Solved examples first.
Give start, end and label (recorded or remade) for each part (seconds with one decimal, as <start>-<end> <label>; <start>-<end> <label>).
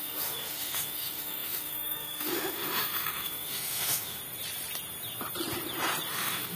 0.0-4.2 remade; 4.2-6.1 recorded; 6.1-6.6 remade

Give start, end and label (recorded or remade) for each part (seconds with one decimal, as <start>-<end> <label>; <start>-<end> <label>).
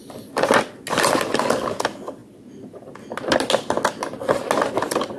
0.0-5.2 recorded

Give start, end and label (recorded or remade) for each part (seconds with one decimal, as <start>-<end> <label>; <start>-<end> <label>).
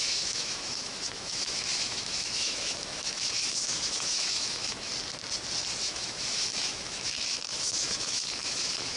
0.0-4.9 remade; 4.9-5.8 recorded; 5.8-9.0 remade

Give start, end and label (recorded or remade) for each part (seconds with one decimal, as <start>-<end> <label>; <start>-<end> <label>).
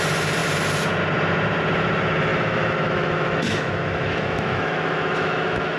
0.0-2.3 recorded; 2.3-5.8 remade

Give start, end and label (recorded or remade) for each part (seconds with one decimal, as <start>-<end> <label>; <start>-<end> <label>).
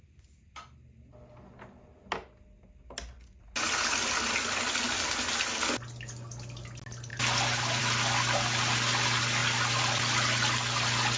0.0-11.2 recorded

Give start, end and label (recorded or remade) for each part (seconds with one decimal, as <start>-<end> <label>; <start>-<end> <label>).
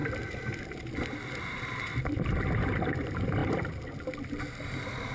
0.0-5.1 recorded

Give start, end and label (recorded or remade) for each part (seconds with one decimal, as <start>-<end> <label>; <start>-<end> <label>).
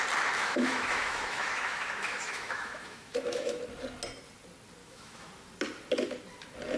0.0-0.4 recorded; 0.4-3.6 remade; 3.6-4.8 recorded; 4.8-5.3 remade; 5.3-6.8 recorded